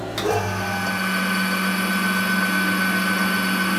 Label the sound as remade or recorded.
recorded